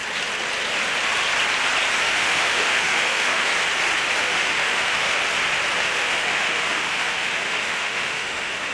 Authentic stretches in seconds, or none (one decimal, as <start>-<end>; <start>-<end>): 0.0-2.0; 3.5-4.2; 5.2-5.8

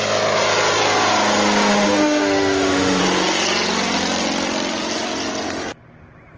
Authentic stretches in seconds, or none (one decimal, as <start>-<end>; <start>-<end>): 0.0-1.7; 3.0-6.4

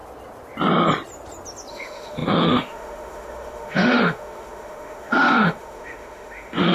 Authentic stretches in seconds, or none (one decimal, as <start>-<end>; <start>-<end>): 0.0-1.7

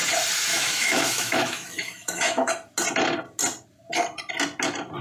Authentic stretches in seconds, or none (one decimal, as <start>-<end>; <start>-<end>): 0.0-0.5; 2.5-5.0

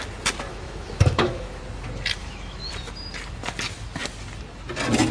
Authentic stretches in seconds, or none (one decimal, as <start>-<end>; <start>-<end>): 0.0-0.5; 1.6-2.2; 2.7-5.1